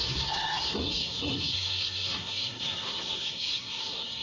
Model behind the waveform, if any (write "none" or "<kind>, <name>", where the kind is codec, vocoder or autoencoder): codec, SNAC